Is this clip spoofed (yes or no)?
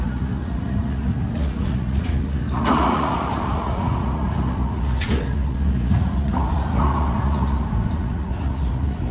yes